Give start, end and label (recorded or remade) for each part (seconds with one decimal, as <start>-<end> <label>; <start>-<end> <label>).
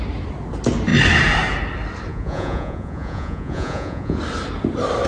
0.0-2.1 recorded; 2.1-4.2 remade; 4.2-5.1 recorded